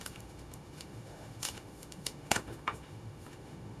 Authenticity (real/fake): fake